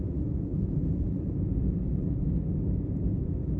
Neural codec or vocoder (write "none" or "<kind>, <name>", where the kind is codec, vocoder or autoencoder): vocoder, Vocos